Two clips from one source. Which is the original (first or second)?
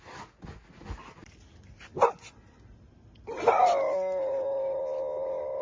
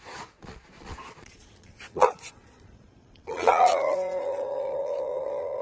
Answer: first